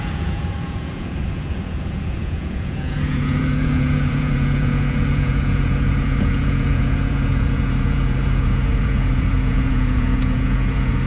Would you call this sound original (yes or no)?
no